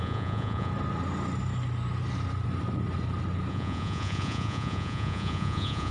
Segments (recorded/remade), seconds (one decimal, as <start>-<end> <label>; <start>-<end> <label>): 0.0-0.7 remade; 0.7-3.5 recorded; 3.5-5.9 remade

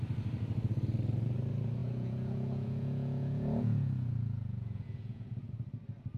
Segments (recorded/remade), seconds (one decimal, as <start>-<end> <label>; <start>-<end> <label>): 0.0-1.8 recorded; 1.8-5.5 remade; 5.5-6.2 recorded

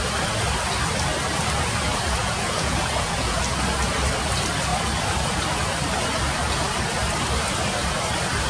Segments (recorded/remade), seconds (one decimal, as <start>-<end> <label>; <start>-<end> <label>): 0.0-2.2 recorded; 2.2-3.4 remade; 3.4-8.5 recorded

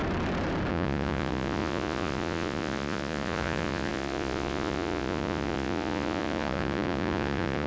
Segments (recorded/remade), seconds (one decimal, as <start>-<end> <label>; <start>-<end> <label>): 0.0-0.7 recorded; 0.7-7.7 remade

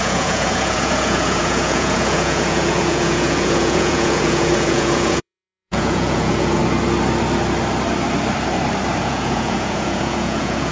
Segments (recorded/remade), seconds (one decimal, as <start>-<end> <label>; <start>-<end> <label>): 0.0-6.6 remade; 6.6-9.0 recorded; 9.0-10.7 remade

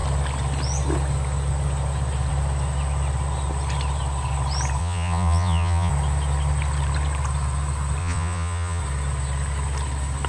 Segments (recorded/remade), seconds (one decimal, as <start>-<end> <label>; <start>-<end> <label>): 0.0-4.8 recorded; 4.8-5.9 remade; 5.9-8.0 recorded; 8.0-8.8 remade; 8.8-10.3 recorded

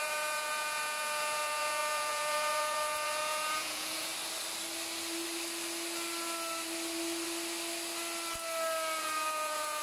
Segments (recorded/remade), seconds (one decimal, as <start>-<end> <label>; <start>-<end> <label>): 0.0-4.1 remade; 4.1-9.0 recorded; 9.0-9.8 remade